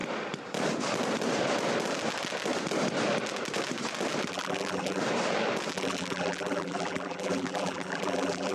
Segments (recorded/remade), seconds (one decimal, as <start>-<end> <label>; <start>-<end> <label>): 0.0-4.3 recorded; 4.3-5.0 remade; 5.0-5.7 recorded; 5.7-8.5 remade

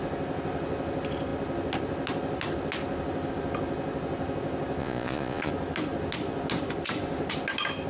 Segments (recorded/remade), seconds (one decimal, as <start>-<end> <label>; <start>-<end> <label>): 0.0-4.8 recorded; 4.8-5.5 remade; 5.5-7.9 recorded

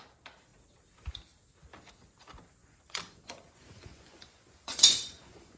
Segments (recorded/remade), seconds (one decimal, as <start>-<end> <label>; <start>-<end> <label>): 0.0-2.6 recorded; 2.6-5.6 remade

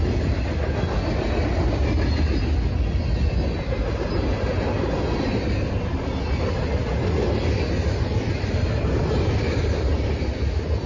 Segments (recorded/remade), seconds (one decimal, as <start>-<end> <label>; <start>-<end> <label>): 0.0-10.9 recorded

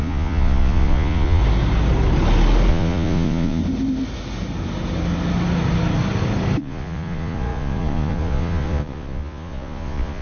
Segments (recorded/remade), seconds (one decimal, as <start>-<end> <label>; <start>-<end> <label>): 0.0-1.4 remade; 1.4-2.7 recorded; 2.7-3.6 remade; 3.6-6.6 recorded; 6.6-10.2 remade